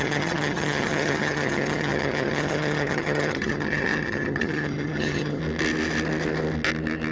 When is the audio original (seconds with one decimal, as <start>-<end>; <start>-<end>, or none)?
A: 5.4-7.1